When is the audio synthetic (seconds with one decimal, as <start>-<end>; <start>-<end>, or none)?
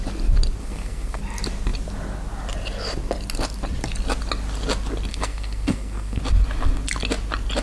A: 0.6-1.2; 5.1-6.2